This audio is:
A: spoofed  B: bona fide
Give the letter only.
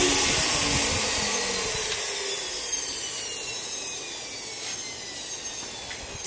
B